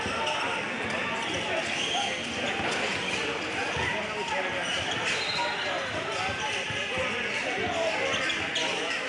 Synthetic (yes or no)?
no